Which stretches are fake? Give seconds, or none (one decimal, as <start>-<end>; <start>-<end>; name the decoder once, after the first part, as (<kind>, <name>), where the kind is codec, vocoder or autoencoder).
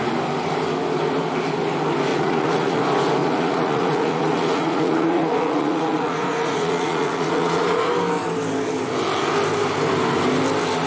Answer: 2.1-2.8 (vocoder, Vocos); 3.2-7.9